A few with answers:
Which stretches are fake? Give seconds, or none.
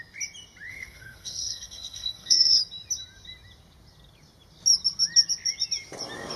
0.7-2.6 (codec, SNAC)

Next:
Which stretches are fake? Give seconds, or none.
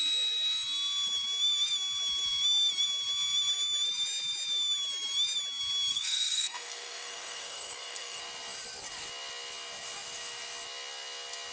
5.9-8.2 (codec, SNAC)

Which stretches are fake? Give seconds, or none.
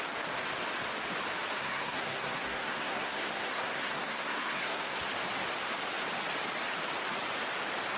1.6-5.0 (codec, SNAC)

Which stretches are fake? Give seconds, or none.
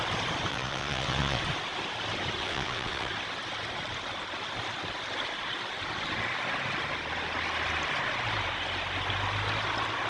0.5-1.4 (vocoder, WaveNeXt); 2.4-3.1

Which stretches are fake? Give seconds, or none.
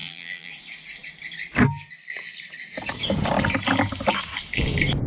0.0-0.5 (vocoder, BigVGAN v2)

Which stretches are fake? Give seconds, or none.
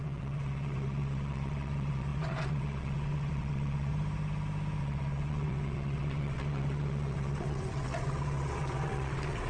0.0-3.9 (vocoder, WaveNeXt); 4.8-9.5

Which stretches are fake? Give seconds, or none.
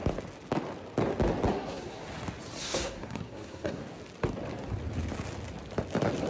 1.5-2.0 (codec, SNAC); 2.6-3.8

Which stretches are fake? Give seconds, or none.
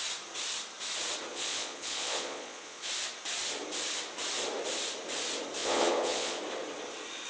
1.3-2.9 (vocoder, Vocos); 5.6-6.4